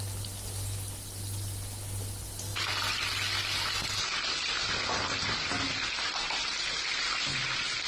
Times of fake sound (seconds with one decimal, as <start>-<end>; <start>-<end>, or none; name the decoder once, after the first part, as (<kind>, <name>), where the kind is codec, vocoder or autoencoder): none